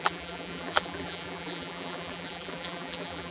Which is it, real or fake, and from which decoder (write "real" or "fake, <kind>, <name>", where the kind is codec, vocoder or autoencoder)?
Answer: fake, vocoder, BigVGAN v2